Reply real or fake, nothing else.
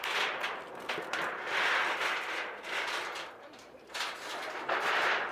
real